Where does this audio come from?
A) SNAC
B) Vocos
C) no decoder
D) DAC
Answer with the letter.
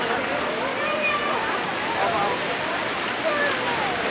C